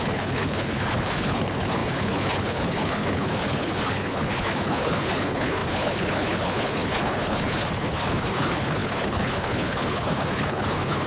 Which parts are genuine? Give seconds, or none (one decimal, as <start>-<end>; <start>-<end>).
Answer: none